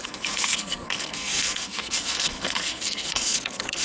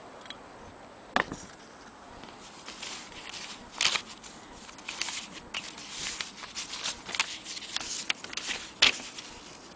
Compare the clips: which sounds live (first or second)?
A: second